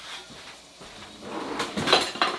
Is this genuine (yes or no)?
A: yes